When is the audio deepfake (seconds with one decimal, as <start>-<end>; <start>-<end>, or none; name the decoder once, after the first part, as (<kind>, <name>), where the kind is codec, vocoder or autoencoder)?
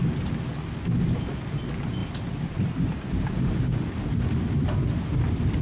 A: 2.0-5.6 (vocoder, BigVGAN v2)